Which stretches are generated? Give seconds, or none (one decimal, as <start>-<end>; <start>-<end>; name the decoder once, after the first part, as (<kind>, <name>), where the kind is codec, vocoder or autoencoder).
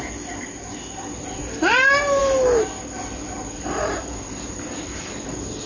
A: none